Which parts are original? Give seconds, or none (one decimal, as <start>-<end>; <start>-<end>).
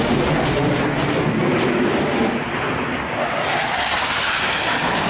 0.0-5.1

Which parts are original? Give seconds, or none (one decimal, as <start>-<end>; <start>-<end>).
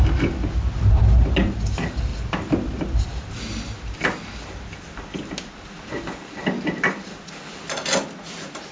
0.0-8.7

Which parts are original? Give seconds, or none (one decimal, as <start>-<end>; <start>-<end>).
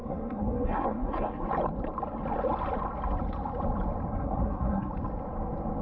1.5-4.1; 4.9-5.8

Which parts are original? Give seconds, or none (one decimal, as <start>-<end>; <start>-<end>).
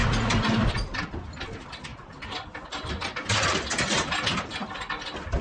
1.0-1.9; 3.9-5.4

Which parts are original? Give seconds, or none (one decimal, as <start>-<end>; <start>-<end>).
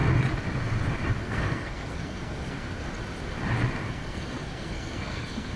0.0-1.2; 2.8-3.9